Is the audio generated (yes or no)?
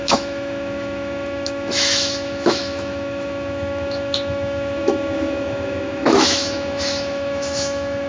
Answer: yes